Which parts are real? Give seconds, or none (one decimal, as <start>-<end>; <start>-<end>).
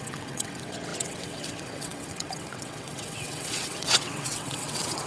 none